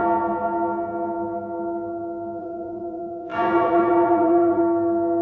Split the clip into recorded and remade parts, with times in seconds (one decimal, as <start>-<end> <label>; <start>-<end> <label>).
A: 0.0-2.4 recorded; 2.4-4.6 remade; 4.6-5.2 recorded